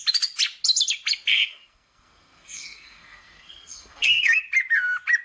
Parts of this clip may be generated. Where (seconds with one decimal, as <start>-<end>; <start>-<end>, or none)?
1.3-4.4